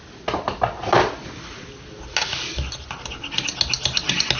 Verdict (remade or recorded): recorded